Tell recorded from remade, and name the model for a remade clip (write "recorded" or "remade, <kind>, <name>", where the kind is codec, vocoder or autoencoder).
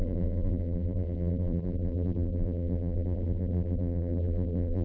remade, vocoder, BigVGAN v2